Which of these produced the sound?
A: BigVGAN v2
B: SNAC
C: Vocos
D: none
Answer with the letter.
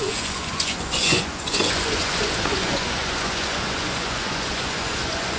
C